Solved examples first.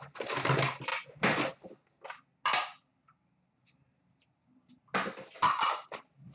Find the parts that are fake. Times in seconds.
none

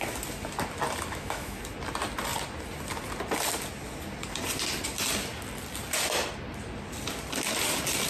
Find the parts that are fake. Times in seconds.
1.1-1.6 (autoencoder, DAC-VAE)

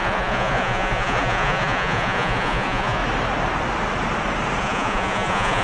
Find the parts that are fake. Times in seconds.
0.0-3.0 (vocoder, Vocos); 4.6-5.6